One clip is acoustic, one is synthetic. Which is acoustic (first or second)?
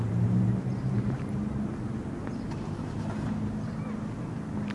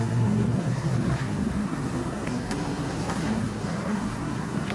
first